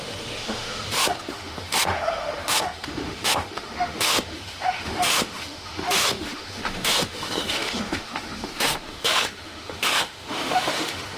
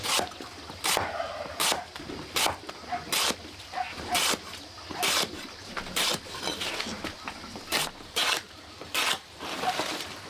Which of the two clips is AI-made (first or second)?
first